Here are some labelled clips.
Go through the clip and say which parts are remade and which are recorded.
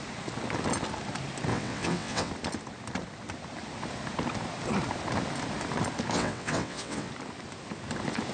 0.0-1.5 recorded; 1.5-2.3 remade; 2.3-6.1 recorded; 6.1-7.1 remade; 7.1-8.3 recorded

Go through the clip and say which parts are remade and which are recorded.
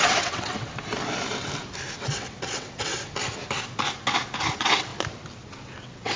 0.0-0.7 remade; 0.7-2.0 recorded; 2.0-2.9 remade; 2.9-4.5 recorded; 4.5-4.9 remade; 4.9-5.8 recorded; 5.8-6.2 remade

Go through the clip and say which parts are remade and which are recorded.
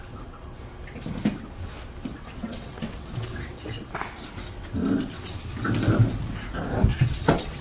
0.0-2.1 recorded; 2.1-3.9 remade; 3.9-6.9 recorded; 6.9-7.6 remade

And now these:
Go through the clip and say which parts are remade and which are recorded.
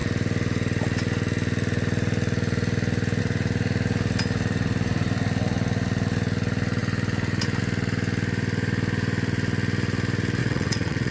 0.0-10.4 recorded; 10.4-11.1 remade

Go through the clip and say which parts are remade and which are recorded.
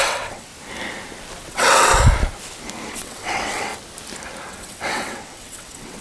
0.0-0.5 remade; 0.5-1.4 recorded; 1.4-1.9 remade; 1.9-2.9 recorded; 2.9-3.7 remade; 3.7-4.5 recorded; 4.5-6.0 remade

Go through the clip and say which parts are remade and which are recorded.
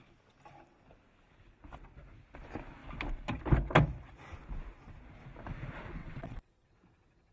0.0-6.0 recorded; 6.0-6.7 remade; 6.7-7.3 recorded